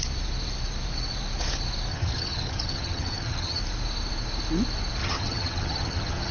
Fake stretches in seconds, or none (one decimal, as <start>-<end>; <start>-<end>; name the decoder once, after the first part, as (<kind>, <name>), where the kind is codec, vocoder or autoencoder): 1.9-3.6 (vocoder, HiFi-GAN); 5.0-6.3